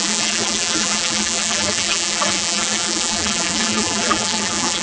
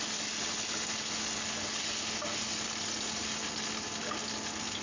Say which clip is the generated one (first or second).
first